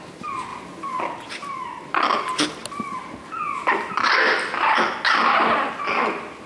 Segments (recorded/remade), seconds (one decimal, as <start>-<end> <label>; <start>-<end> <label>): 0.0-6.5 recorded